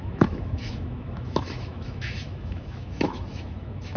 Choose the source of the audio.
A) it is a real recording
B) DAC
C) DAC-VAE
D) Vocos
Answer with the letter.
C